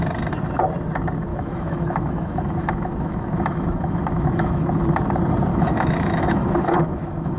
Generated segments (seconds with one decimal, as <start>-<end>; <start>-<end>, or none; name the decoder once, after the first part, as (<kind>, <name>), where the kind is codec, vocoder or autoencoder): 1.3-4.8 (autoencoder, DAC-VAE); 5.5-7.4